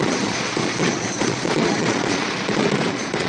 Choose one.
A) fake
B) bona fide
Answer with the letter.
A